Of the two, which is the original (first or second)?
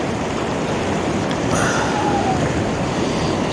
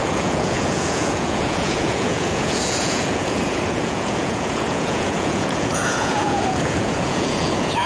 first